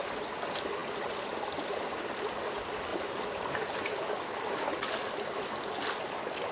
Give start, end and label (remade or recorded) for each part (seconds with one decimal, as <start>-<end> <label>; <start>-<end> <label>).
0.0-2.9 recorded; 2.9-3.7 remade; 3.7-6.5 recorded